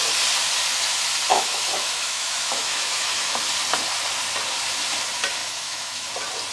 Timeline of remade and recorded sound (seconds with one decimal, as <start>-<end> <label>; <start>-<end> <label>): 0.0-1.3 recorded; 1.3-3.4 remade; 3.4-5.4 recorded; 5.4-6.1 remade; 6.1-6.5 recorded